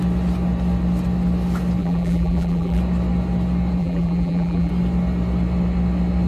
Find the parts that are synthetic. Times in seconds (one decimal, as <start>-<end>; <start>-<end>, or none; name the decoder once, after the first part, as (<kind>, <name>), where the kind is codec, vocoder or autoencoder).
1.8-2.8 (vocoder, BigVGAN v2); 3.8-4.7